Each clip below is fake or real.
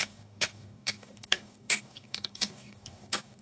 fake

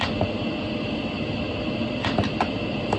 real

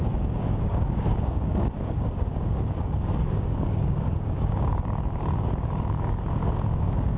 fake